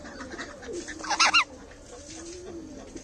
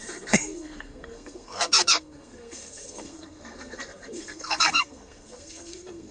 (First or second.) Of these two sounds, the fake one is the second